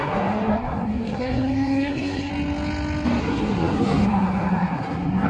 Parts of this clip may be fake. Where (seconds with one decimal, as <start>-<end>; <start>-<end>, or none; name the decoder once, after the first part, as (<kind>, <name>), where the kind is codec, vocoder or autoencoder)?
0.0-2.3 (codec, SNAC); 3.2-5.3